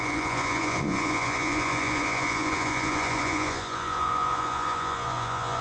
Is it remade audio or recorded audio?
remade